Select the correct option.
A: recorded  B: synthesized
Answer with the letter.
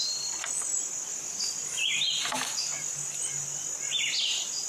A